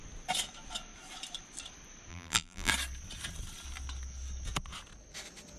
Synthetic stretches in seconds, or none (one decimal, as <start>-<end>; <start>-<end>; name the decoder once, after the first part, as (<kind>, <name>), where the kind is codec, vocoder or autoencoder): 2.1-2.7 (vocoder, BigVGAN v2)